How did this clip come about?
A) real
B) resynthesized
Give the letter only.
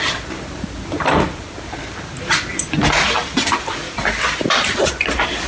A